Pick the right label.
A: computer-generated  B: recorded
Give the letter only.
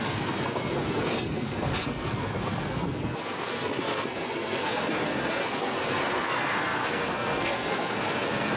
A